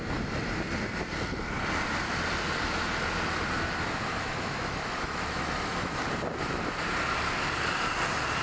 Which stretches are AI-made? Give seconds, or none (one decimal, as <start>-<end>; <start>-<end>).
4.1-6.0

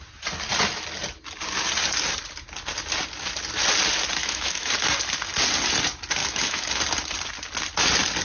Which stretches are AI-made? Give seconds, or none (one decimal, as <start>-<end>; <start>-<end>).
4.2-4.7; 6.2-6.7

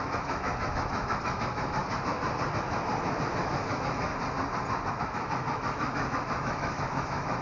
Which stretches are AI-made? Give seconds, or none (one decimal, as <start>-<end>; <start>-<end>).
0.0-1.8; 3.4-4.1; 5.0-7.4

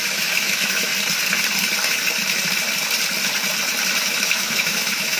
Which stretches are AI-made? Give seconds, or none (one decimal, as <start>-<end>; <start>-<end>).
0.0-0.9; 4.0-5.2

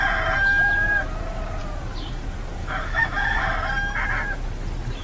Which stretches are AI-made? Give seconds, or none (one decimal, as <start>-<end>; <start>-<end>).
2.6-3.5

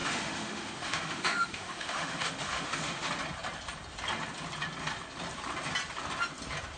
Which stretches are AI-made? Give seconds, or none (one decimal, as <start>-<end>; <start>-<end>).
0.0-3.1

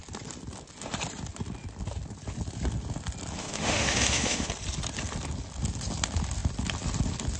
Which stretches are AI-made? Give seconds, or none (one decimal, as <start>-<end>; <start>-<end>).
3.4-4.5

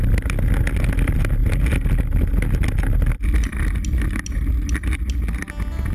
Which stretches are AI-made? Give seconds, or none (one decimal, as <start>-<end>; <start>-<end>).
none